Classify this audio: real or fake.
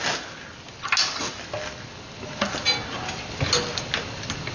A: real